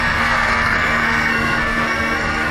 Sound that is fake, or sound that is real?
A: fake